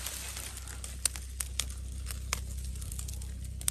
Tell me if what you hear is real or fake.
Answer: real